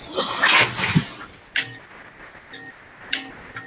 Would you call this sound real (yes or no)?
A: yes